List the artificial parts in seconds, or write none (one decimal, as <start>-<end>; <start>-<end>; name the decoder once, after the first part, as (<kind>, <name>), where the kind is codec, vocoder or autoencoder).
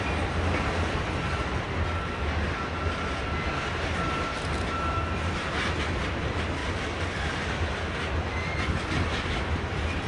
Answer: none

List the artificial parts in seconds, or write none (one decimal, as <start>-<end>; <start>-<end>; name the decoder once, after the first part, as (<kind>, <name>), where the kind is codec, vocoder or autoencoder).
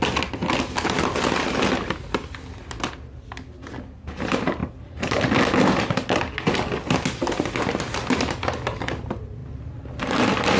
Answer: 0.4-1.0 (vocoder, BigVGAN v2); 9.4-10.6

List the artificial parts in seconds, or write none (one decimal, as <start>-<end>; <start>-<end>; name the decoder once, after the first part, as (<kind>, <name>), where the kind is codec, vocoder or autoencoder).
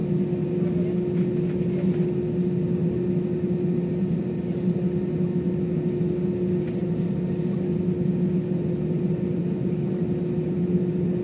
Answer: none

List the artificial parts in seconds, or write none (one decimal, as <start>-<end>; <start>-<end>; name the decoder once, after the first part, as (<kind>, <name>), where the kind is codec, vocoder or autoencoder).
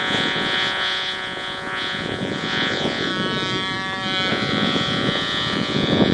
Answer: 0.0-3.1 (vocoder, Vocos); 4.3-6.1